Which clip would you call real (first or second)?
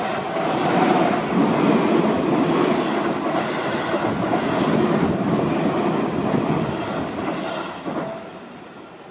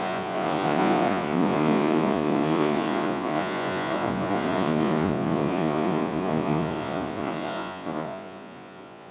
first